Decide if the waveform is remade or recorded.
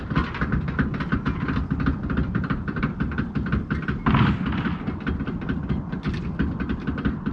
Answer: recorded